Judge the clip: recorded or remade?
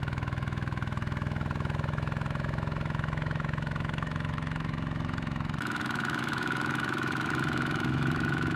remade